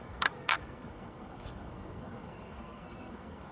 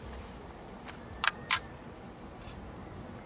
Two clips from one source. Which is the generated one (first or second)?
first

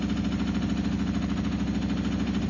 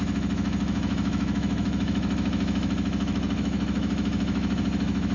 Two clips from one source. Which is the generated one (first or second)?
second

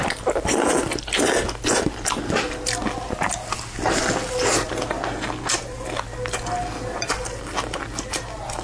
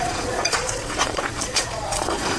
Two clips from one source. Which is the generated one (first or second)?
second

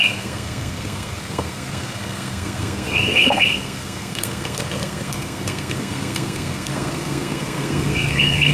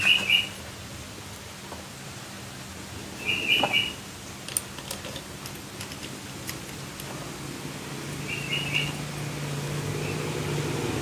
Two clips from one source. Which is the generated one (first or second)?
first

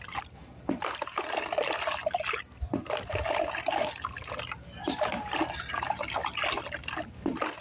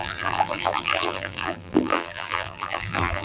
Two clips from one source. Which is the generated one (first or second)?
second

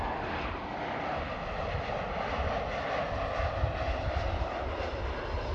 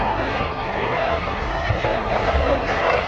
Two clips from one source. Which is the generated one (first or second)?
second